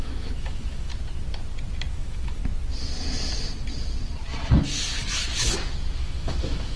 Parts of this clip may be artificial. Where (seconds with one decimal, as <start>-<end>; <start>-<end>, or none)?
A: 0.0-0.9; 1.9-2.4; 6.0-6.8